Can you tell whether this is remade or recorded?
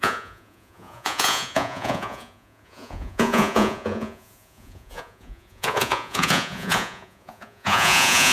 remade